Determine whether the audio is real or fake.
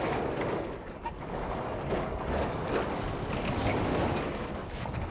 fake